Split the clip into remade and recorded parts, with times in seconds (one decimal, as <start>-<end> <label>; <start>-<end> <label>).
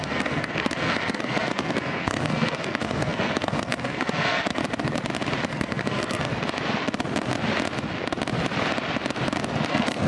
0.0-4.6 remade; 4.6-5.5 recorded; 5.5-6.3 remade; 6.3-9.7 recorded; 9.7-10.1 remade